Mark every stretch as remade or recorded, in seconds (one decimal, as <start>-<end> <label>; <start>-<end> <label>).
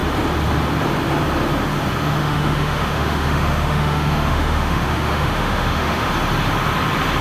0.0-2.0 recorded; 2.0-6.1 remade; 6.1-7.2 recorded